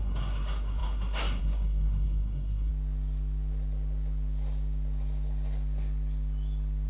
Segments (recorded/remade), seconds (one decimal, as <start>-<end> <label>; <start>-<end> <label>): 0.0-2.7 remade; 2.7-6.9 recorded